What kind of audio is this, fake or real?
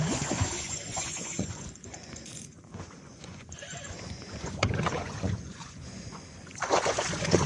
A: fake